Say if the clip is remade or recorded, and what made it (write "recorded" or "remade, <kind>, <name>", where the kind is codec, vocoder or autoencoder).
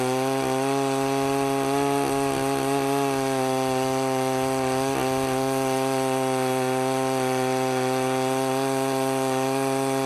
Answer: recorded